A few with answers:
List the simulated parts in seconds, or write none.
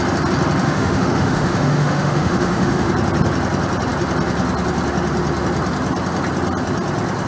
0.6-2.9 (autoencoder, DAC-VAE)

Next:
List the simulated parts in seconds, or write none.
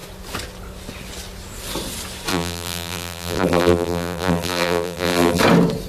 2.3-5.4 (vocoder, BigVGAN v2)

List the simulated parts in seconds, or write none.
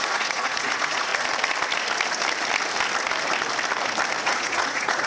0.0-1.1 (vocoder, Vocos); 4.2-5.1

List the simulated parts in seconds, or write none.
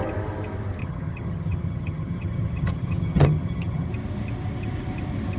0.8-3.9 (vocoder, HiFi-GAN)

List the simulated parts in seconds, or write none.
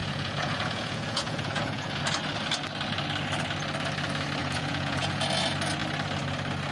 0.0-2.0 (vocoder, Vocos); 4.4-5.2